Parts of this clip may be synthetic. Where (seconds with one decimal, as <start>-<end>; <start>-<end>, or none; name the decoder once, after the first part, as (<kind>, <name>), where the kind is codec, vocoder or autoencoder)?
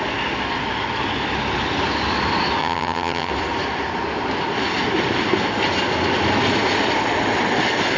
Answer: 2.6-3.3 (vocoder, HiFi-GAN)